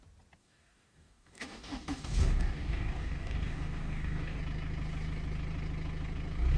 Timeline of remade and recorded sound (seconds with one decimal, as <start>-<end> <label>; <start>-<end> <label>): 0.0-0.4 recorded; 0.4-4.4 remade; 4.4-6.6 recorded